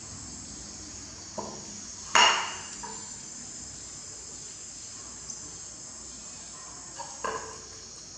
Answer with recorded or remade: recorded